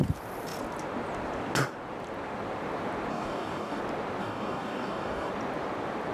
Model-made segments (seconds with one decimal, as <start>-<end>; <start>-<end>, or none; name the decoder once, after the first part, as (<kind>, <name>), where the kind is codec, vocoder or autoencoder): 3.1-3.8 (codec, DAC); 4.2-5.3